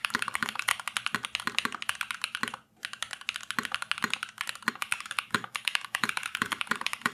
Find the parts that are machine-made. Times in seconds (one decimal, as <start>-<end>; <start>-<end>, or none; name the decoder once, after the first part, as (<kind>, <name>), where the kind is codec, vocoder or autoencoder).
0.0-0.7 (codec, DAC); 4.7-7.1